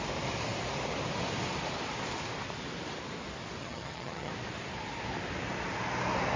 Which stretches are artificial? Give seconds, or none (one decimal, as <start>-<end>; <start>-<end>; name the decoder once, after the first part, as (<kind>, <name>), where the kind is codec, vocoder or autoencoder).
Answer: 3.6-4.3 (vocoder, HiFi-GAN)